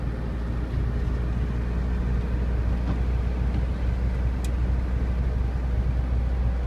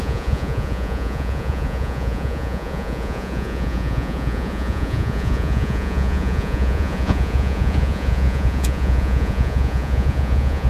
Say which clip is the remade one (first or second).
second